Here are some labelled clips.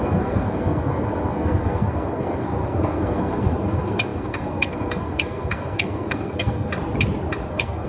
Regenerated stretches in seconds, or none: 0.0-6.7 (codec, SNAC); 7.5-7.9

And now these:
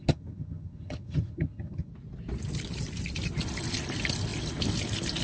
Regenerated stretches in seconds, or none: 0.0-1.9 (vocoder, HiFi-GAN)

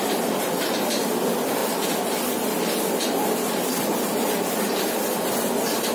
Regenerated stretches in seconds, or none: none

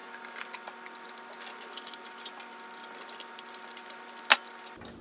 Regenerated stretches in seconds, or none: none

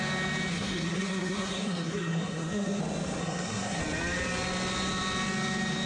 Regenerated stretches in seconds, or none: 0.5-2.8 (codec, SNAC); 3.2-3.8

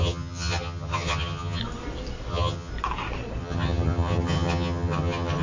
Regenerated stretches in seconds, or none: 0.0-1.6 (vocoder, HiFi-GAN); 2.3-2.7; 3.4-5.4

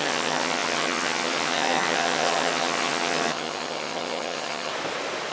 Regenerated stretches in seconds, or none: 0.0-4.7 (vocoder, HiFi-GAN)